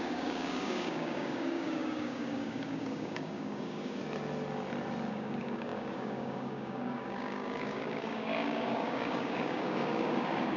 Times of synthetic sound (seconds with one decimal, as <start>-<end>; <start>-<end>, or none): 0.0-4.0; 5.1-10.6